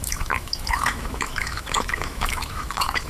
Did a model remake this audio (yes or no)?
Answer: yes